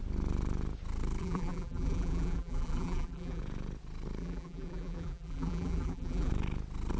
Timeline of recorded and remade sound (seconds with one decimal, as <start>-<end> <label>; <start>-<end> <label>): 0.0-1.2 recorded; 1.2-3.4 remade; 3.4-4.2 recorded; 4.2-6.3 remade; 6.3-7.0 recorded